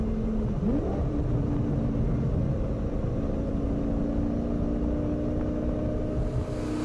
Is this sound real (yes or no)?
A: yes